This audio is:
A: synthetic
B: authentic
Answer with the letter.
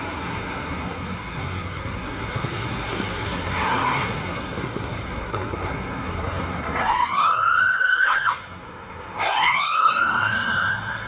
A